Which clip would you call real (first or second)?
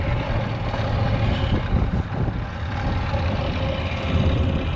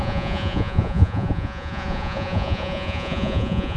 first